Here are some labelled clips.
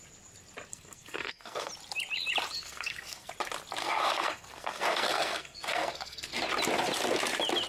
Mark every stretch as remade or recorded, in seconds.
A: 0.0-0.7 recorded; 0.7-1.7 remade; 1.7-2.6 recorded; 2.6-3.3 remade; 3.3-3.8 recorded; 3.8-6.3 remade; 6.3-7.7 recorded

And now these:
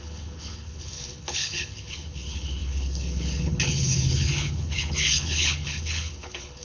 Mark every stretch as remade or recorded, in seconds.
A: 0.0-6.6 remade

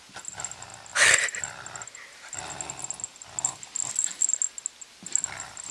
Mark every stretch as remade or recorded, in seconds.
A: 0.0-5.7 recorded

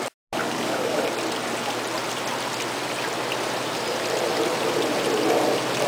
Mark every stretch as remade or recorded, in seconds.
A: 0.0-0.4 recorded; 0.4-1.0 remade; 1.0-5.9 recorded

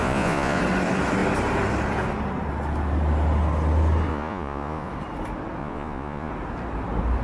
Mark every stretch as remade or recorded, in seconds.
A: 0.0-0.6 remade; 0.6-4.1 recorded; 4.1-4.9 remade; 4.9-5.6 recorded; 5.6-6.3 remade; 6.3-7.2 recorded